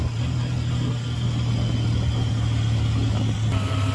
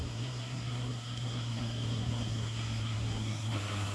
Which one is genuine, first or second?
first